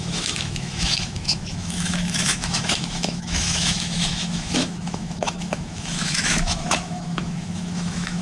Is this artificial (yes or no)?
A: yes